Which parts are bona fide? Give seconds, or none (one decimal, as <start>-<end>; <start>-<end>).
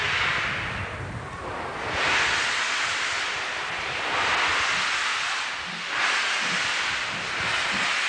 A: 0.0-8.1